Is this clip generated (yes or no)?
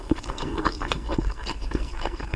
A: yes